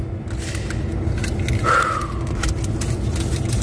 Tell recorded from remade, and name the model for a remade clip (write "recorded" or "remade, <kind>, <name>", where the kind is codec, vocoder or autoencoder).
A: recorded